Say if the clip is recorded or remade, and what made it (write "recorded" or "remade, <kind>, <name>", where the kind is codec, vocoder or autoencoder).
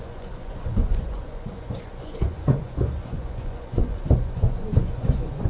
remade, vocoder, Vocos